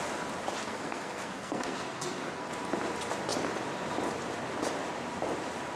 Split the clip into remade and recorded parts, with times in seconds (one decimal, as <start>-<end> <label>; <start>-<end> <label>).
0.0-0.6 recorded; 0.6-2.5 remade; 2.5-5.8 recorded